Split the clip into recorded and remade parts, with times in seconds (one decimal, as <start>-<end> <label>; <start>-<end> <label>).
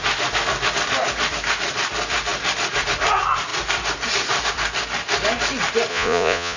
0.0-5.9 recorded; 5.9-6.6 remade